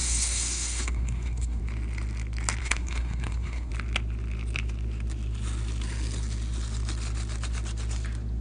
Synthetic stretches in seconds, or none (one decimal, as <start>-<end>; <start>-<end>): 0.0-1.6; 2.6-3.7